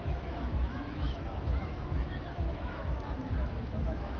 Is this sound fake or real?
fake